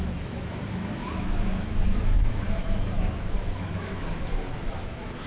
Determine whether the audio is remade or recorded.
remade